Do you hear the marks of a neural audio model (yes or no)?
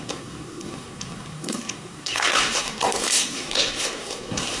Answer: yes